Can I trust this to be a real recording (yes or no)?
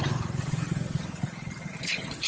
no